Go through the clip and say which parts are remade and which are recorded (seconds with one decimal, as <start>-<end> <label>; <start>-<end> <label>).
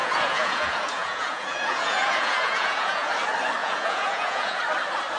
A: 0.0-3.1 remade; 3.1-3.6 recorded; 3.6-4.6 remade; 4.6-5.2 recorded